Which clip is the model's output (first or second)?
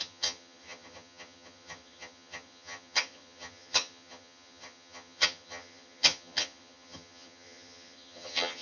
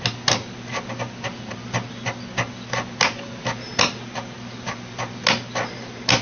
first